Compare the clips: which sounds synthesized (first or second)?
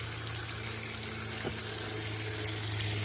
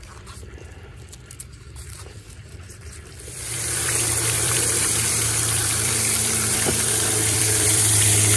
second